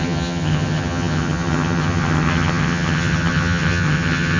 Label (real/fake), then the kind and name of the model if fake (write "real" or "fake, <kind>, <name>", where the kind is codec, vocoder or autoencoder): fake, vocoder, HiFi-GAN